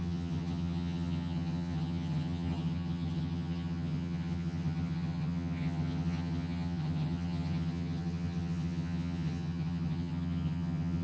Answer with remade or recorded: remade